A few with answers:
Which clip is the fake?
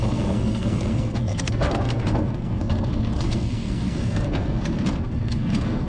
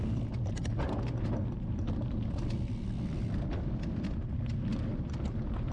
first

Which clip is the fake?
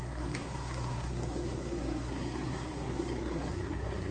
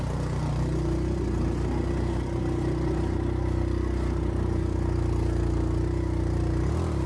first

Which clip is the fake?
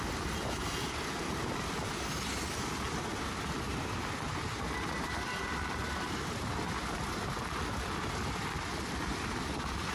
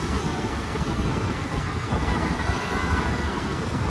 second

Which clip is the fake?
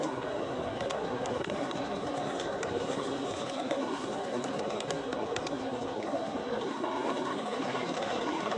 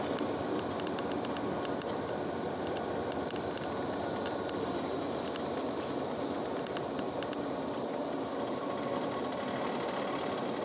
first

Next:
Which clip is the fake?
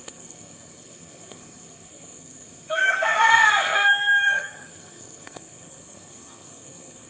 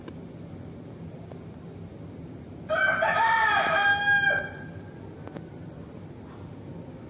first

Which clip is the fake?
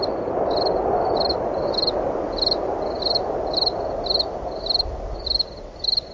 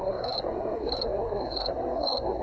second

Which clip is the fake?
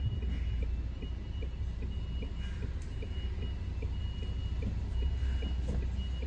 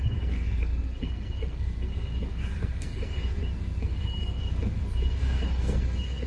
second